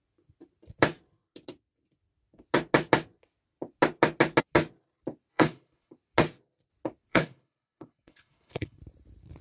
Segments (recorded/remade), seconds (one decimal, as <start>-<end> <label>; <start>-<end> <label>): 0.0-5.3 recorded; 5.3-5.9 remade; 5.9-7.1 recorded; 7.1-8.8 remade; 8.8-9.4 recorded